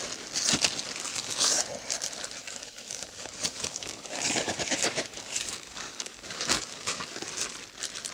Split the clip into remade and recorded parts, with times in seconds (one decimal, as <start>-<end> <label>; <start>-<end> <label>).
0.0-1.1 recorded; 1.1-1.6 remade; 1.6-2.4 recorded; 2.4-7.3 remade; 7.3-8.1 recorded